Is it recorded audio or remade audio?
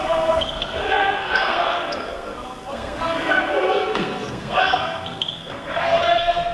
remade